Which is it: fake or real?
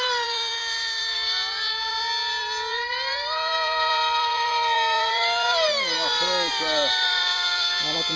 fake